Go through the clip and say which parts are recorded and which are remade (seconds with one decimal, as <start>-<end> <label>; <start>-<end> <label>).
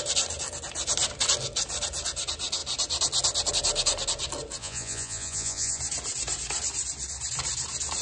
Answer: 0.0-4.6 recorded; 4.6-5.8 remade; 5.8-8.0 recorded